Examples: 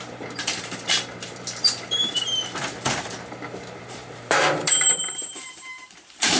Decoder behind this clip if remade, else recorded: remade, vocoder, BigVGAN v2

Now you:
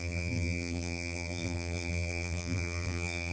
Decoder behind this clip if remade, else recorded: remade, vocoder, BigVGAN v2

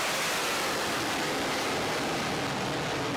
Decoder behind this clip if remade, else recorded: recorded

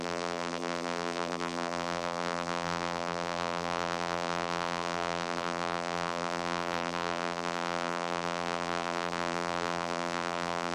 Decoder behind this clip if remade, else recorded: remade, vocoder, BigVGAN v2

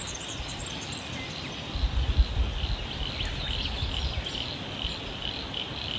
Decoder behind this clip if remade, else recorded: recorded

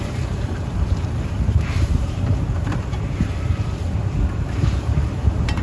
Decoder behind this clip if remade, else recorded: remade, vocoder, BigVGAN v2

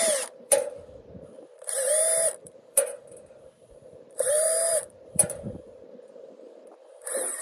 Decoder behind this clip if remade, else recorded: remade, vocoder, BigVGAN v2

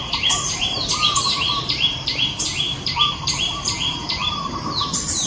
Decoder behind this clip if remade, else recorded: remade, vocoder, BigVGAN v2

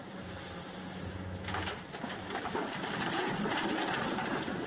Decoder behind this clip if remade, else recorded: remade, vocoder, BigVGAN v2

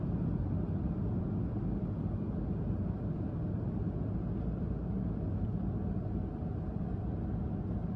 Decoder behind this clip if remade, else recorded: recorded